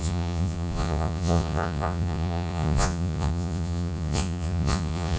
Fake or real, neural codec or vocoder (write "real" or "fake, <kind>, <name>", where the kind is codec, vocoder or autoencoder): fake, vocoder, Vocos